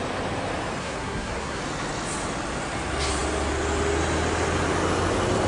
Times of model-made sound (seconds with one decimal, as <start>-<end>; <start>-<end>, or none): 0.8-1.6